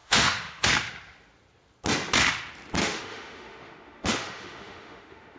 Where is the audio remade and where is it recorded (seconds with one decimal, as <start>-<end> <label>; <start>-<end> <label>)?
0.0-0.7 remade; 0.7-2.8 recorded; 2.8-5.4 remade